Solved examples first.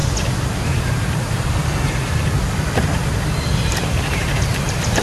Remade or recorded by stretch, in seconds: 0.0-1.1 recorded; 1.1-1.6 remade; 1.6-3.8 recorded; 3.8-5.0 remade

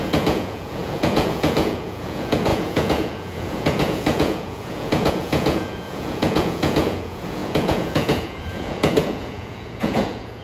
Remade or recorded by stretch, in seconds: 0.0-10.4 remade

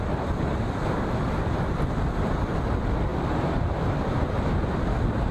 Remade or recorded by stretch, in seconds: 0.0-5.3 recorded

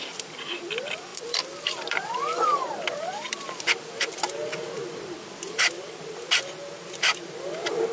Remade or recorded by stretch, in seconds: 0.0-1.1 recorded; 1.1-5.8 remade; 5.8-7.9 recorded

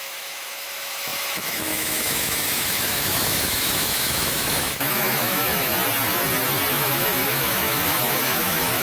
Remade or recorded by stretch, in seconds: 0.0-5.7 remade; 5.7-6.7 recorded; 6.7-8.8 remade

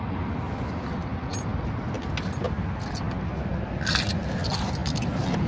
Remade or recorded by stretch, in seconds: 0.0-5.5 recorded